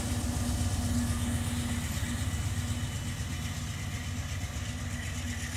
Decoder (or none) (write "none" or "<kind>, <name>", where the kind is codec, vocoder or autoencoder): none